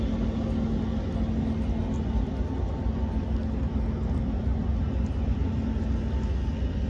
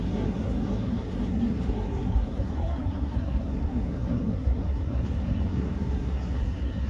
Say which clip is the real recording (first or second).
first